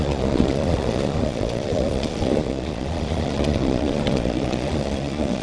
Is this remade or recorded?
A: remade